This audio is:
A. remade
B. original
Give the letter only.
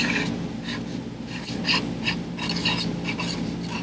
B